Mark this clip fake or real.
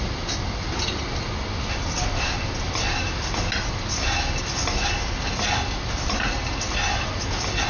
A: real